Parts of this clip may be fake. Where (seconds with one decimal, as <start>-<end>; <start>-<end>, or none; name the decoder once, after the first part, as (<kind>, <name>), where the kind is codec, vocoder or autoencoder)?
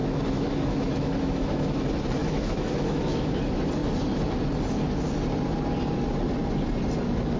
0.0-1.8 (autoencoder, DAC-VAE); 2.2-3.4